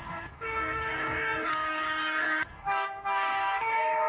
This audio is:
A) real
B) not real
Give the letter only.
B